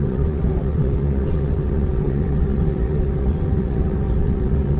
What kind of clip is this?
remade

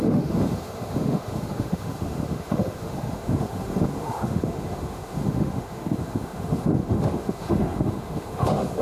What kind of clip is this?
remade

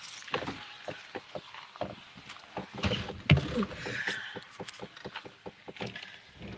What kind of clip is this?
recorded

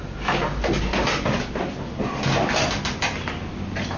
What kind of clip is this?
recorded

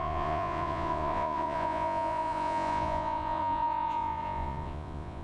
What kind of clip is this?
remade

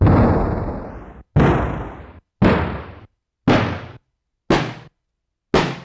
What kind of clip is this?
recorded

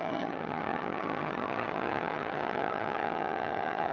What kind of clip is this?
remade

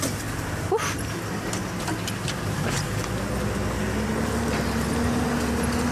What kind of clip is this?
recorded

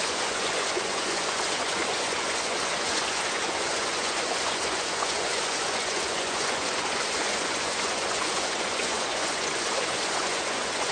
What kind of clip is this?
remade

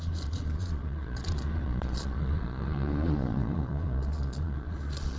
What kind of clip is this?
remade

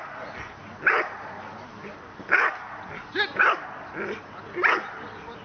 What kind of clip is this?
recorded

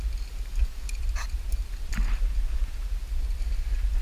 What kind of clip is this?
recorded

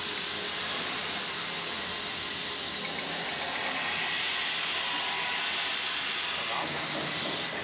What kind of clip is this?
recorded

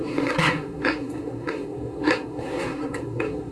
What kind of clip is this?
remade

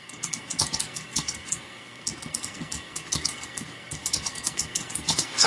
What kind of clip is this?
remade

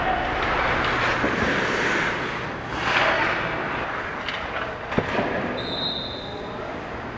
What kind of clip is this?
recorded